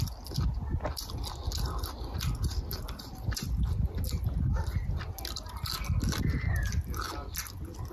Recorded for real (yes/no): yes